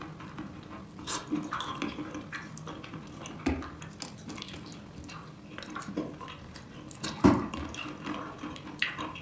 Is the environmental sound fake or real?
real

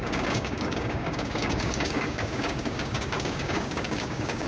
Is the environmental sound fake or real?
fake